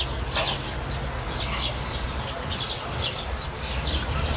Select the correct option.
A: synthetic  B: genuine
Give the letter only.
B